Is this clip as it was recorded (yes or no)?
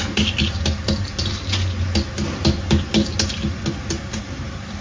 yes